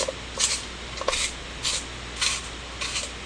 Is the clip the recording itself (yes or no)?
yes